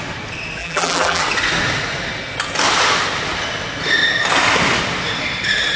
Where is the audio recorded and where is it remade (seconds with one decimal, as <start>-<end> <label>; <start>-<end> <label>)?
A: 0.0-0.6 recorded; 0.6-1.2 remade; 1.2-5.8 recorded